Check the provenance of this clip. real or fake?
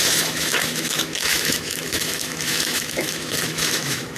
fake